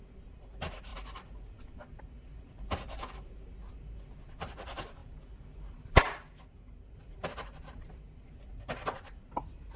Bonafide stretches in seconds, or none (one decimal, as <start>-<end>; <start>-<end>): 0.0-9.8